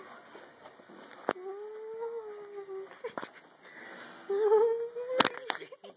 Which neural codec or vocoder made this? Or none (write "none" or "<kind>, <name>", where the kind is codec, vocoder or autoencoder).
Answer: none